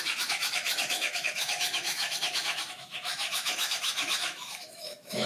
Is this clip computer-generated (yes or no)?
yes